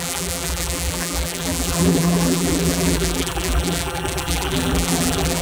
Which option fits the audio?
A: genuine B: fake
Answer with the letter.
B